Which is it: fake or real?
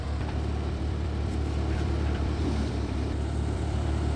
fake